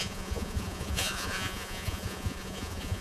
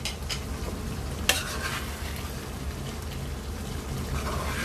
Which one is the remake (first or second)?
first